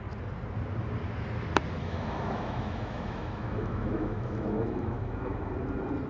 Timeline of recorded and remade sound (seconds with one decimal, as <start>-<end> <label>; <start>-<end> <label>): 0.0-1.8 recorded; 1.8-5.5 remade; 5.5-6.1 recorded